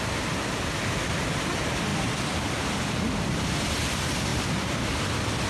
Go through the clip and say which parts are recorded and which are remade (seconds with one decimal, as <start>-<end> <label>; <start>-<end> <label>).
0.0-1.9 recorded; 1.9-3.7 remade; 3.7-5.5 recorded